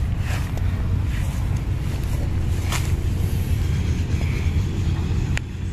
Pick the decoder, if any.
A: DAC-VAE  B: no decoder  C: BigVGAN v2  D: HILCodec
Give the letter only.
B